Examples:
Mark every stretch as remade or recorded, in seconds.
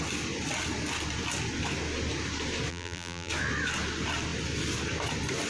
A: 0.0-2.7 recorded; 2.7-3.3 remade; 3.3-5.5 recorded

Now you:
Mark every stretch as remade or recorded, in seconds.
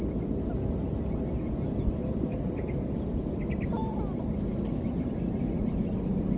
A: 0.0-6.4 recorded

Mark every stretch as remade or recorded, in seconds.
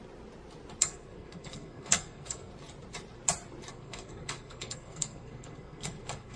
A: 0.0-0.8 recorded; 0.8-2.5 remade; 2.5-3.7 recorded; 3.7-6.4 remade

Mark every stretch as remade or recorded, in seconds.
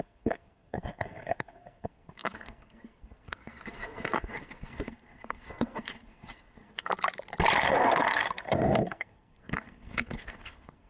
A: 0.0-6.9 remade; 6.9-7.6 recorded; 7.6-10.9 remade